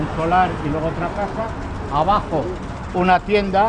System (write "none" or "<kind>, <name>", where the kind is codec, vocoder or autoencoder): none